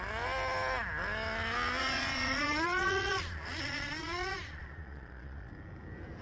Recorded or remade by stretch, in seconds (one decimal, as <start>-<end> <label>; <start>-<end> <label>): 0.0-1.8 recorded; 1.8-5.5 remade; 5.5-6.2 recorded